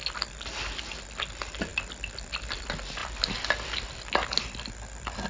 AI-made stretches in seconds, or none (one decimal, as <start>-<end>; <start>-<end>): none